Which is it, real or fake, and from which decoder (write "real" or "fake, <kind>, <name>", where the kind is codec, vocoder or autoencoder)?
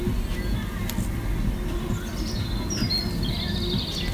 real